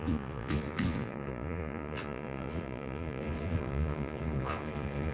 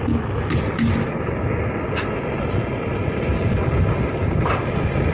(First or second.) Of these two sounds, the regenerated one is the first